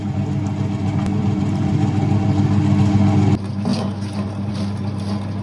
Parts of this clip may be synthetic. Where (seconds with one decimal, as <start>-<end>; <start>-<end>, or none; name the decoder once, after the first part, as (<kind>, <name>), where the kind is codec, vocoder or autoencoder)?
none

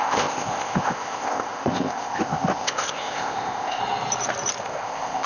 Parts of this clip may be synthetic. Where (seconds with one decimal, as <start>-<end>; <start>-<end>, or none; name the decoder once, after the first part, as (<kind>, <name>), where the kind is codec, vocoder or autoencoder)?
0.0-3.8 (codec, ZipCodec); 4.6-5.3

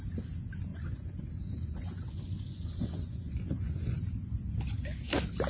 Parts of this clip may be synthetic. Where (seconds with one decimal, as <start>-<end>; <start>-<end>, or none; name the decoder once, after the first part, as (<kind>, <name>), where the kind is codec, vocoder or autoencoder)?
0.7-4.0 (vocoder, Vocos)

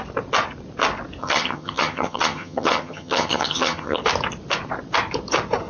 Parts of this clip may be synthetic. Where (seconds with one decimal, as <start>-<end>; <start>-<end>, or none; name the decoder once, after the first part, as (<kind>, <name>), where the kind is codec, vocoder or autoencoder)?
1.2-4.0 (vocoder, HiFi-GAN)

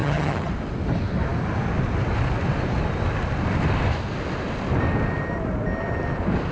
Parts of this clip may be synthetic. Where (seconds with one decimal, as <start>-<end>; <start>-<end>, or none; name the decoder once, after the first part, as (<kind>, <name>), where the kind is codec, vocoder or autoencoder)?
0.0-0.5 (vocoder, HiFi-GAN)